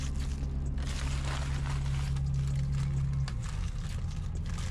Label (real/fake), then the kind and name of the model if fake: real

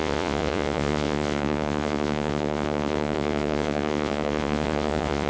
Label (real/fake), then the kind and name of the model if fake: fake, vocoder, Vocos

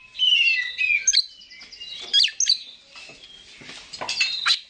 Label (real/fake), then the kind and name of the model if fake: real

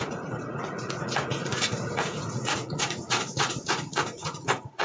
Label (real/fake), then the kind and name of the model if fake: fake, vocoder, Vocos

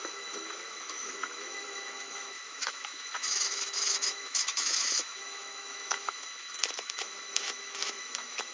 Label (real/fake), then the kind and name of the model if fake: fake, autoencoder, DAC-VAE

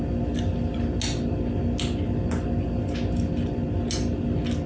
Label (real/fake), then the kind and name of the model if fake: real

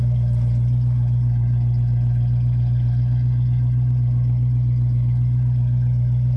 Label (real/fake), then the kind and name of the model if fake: real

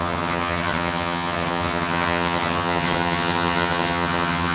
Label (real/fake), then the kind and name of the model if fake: fake, vocoder, HiFi-GAN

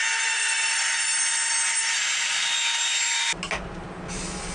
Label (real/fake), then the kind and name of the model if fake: real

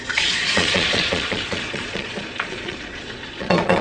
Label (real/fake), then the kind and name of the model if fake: fake, vocoder, Vocos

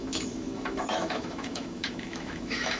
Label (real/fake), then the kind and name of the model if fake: fake, autoencoder, DAC-VAE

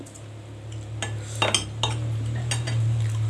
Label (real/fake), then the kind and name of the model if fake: real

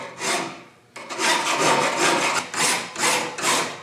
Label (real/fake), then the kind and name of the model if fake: real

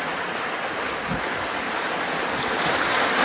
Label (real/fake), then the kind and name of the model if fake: real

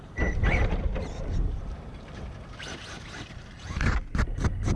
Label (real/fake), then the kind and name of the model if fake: fake, vocoder, BigVGAN v2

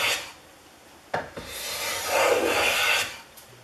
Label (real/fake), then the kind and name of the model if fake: real